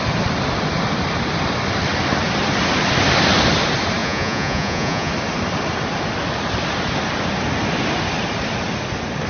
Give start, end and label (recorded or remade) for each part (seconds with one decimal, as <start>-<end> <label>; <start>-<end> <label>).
0.0-4.0 recorded; 4.0-5.1 remade; 5.1-9.3 recorded